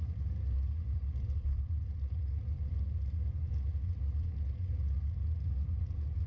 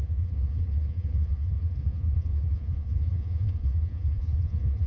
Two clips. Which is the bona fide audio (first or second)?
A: first